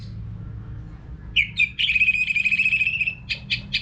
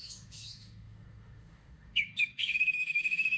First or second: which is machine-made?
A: second